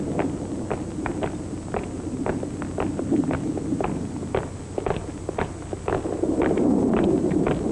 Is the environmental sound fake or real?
real